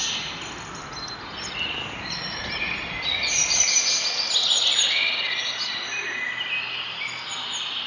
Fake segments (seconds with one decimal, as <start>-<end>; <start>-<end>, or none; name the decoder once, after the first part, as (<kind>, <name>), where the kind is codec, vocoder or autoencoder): none